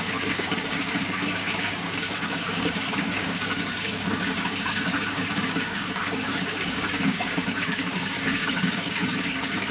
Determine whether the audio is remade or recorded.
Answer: remade